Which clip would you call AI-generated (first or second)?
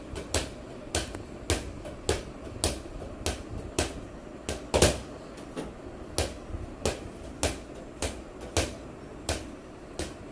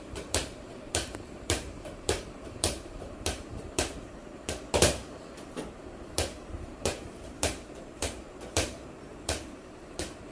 second